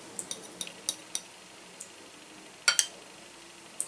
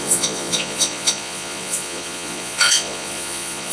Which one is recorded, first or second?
first